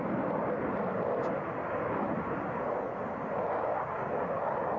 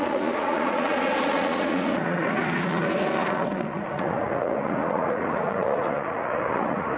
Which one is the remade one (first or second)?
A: second